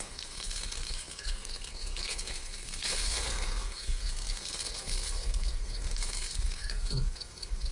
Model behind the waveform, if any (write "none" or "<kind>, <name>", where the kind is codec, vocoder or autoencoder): codec, SNAC